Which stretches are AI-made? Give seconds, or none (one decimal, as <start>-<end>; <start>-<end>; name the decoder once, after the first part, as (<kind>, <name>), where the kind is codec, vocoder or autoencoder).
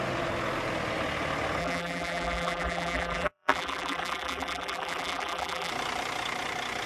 1.6-5.7 (vocoder, BigVGAN v2)